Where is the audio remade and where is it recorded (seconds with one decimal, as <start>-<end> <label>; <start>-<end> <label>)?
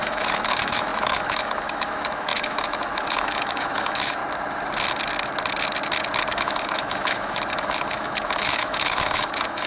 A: 0.0-4.2 remade; 4.2-6.3 recorded; 6.3-9.7 remade